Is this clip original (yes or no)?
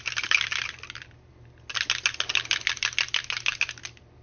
yes